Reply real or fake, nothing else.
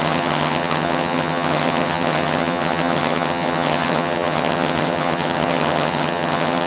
fake